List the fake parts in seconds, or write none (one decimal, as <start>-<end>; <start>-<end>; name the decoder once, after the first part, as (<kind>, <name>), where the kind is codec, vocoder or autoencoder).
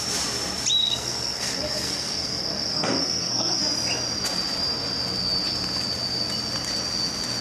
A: 0.8-3.6 (codec, SNAC)